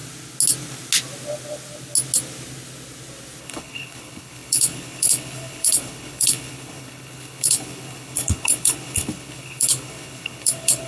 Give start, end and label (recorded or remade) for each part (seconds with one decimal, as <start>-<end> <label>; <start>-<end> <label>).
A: 0.0-3.4 recorded; 3.4-10.9 remade